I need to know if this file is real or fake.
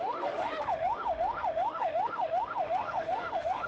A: fake